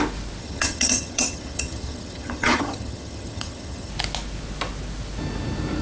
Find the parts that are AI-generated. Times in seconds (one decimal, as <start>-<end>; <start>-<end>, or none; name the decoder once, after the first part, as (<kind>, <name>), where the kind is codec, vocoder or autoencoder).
0.4-3.9 (vocoder, HiFi-GAN)